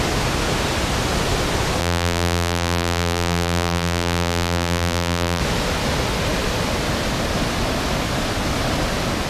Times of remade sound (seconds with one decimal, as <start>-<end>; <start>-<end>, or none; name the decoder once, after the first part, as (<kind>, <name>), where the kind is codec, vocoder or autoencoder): 1.8-5.4 (vocoder, BigVGAN v2)